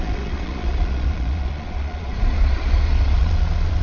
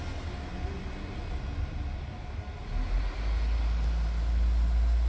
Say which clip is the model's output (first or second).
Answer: first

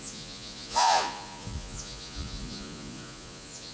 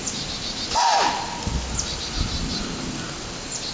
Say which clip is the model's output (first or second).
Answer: first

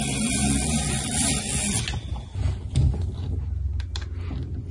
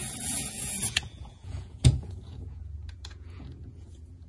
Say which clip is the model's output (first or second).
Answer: second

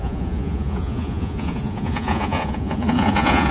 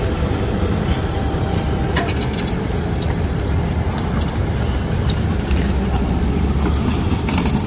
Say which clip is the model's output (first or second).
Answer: first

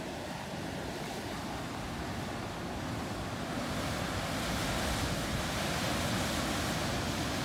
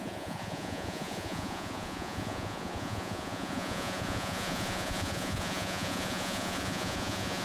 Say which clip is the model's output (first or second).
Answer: second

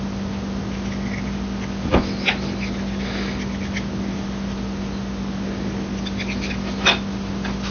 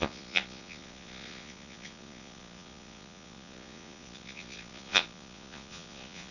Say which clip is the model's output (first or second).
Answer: second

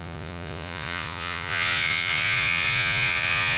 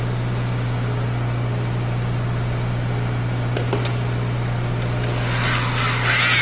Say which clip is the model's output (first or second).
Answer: first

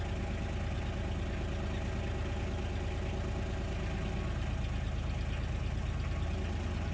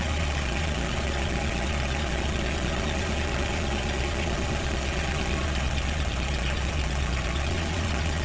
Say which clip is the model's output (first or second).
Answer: second